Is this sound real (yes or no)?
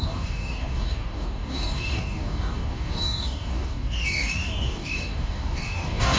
no